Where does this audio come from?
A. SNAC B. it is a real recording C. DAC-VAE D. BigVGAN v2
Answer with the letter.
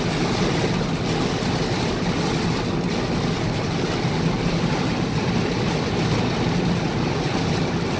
B